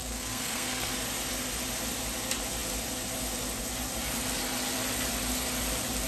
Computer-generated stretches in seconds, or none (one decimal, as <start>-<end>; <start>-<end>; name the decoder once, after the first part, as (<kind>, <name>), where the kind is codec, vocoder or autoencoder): 0.0-0.9 (codec, SNAC)